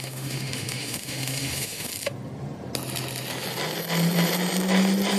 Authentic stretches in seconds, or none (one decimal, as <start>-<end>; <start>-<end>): 1.9-5.2